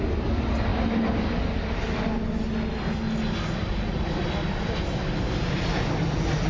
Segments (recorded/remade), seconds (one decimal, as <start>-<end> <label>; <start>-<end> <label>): 0.0-6.5 recorded